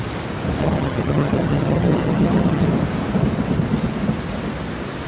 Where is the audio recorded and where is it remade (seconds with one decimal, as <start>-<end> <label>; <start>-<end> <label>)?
0.0-0.6 recorded; 0.6-2.7 remade; 2.7-5.1 recorded